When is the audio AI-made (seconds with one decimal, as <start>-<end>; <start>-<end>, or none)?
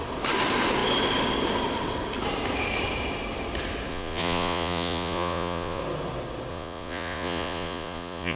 3.9-5.8; 6.5-8.4